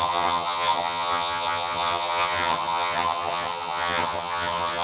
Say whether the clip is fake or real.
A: fake